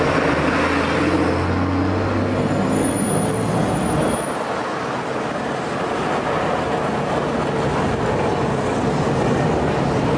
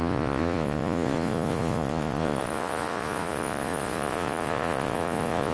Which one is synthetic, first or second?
second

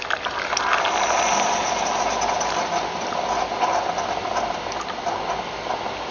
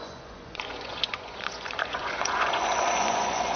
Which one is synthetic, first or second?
second